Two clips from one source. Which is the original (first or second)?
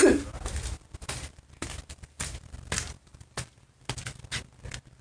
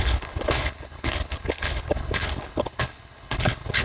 first